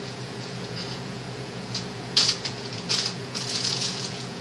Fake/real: fake